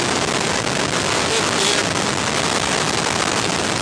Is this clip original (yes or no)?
yes